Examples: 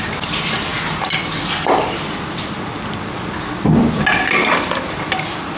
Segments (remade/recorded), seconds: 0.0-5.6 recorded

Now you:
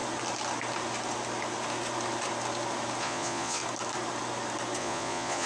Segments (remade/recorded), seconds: 0.0-3.0 recorded; 3.0-3.6 remade; 3.6-4.8 recorded; 4.8-5.5 remade

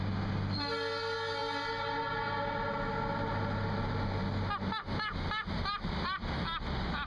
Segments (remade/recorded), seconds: 0.0-7.1 recorded